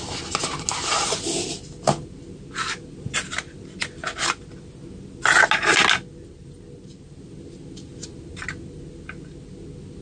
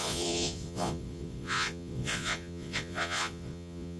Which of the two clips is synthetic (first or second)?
second